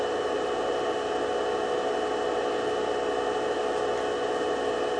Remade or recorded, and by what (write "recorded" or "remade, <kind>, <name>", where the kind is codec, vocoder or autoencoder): recorded